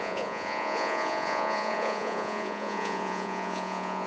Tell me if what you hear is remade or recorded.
remade